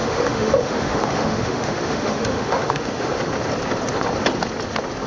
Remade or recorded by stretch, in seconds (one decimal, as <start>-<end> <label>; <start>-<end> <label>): 0.0-3.1 remade; 3.1-5.1 recorded